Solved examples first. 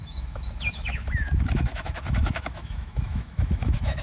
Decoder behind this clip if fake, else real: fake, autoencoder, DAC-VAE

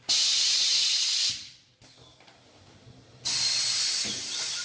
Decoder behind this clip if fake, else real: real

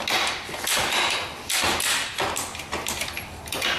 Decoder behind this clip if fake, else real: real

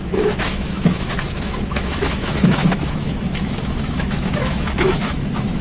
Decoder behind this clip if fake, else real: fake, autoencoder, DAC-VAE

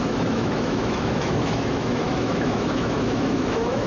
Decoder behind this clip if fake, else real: fake, autoencoder, DAC-VAE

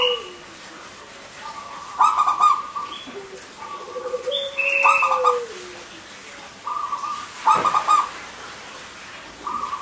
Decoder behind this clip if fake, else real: real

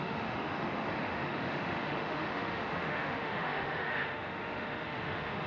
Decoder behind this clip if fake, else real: fake, autoencoder, DAC-VAE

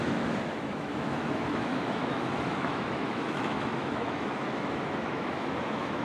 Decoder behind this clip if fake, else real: fake, autoencoder, DAC-VAE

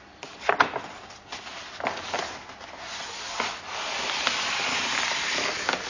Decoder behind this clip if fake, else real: real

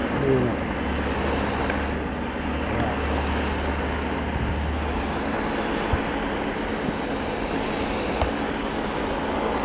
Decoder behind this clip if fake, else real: real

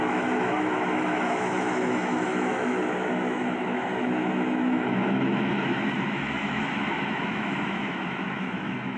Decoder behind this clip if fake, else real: fake, autoencoder, DAC-VAE